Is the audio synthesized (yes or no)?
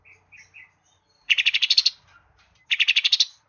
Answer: no